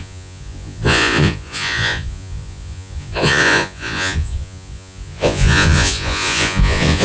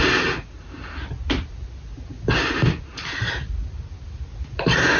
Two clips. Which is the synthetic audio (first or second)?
first